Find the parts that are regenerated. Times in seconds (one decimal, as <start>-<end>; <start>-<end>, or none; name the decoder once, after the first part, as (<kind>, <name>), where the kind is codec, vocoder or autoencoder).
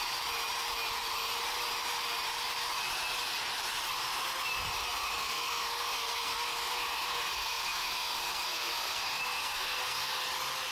5.0-10.2 (codec, SNAC)